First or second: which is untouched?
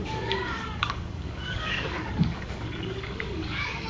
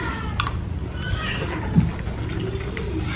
second